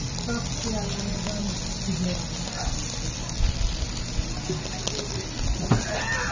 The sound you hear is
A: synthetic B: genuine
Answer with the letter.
B